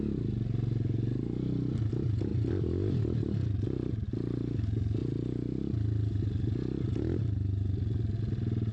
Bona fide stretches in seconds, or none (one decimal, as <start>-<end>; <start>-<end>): 0.0-8.7